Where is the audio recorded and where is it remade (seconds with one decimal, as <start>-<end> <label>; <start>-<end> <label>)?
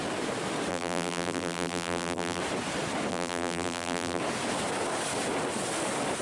0.0-0.7 recorded; 0.7-2.4 remade; 2.4-3.1 recorded; 3.1-4.2 remade; 4.2-6.2 recorded